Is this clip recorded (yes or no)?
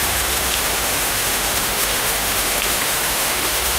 no